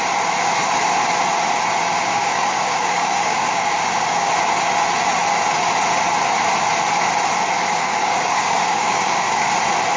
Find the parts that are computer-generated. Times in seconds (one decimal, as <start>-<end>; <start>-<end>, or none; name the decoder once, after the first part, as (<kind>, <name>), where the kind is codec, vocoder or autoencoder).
2.1-4.3 (codec, DAC); 7.8-9.5